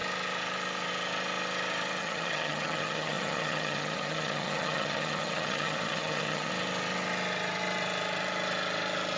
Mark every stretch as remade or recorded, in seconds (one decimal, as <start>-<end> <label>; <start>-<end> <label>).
0.0-2.0 recorded; 2.0-6.5 remade; 6.5-9.2 recorded